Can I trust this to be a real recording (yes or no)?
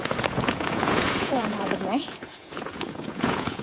no